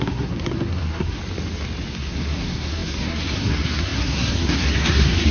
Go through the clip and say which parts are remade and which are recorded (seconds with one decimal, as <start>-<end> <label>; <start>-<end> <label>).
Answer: 0.0-1.2 remade; 1.2-1.9 recorded; 1.9-5.3 remade